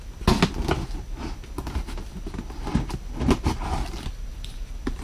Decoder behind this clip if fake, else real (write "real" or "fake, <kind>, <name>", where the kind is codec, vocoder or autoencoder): real